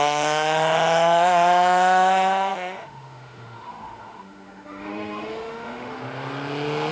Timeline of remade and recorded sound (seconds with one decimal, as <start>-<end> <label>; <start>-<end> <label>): 0.0-6.0 remade; 6.0-6.9 recorded